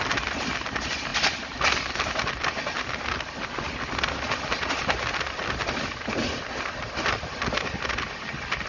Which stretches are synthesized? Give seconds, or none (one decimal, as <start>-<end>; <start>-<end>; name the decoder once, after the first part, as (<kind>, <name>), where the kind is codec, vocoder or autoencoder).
none